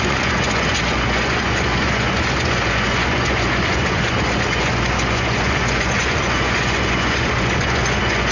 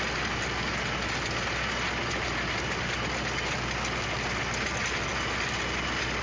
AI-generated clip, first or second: first